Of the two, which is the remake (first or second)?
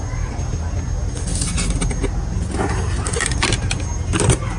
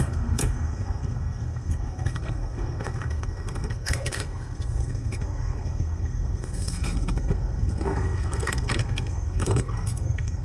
second